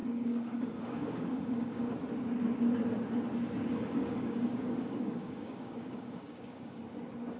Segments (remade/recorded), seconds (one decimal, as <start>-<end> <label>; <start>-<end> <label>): 0.0-1.9 remade; 1.9-3.7 recorded; 3.7-6.8 remade; 6.8-7.4 recorded